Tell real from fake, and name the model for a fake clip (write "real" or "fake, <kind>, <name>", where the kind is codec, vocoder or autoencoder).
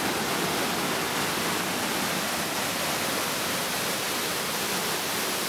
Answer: real